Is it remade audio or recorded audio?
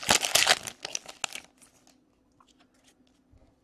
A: recorded